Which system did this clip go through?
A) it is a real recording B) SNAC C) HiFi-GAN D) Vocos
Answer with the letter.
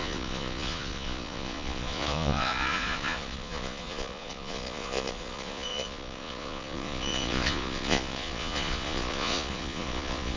D